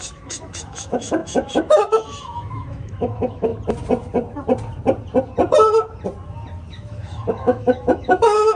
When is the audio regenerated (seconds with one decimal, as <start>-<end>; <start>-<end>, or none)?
0.0-3.5; 6.7-8.5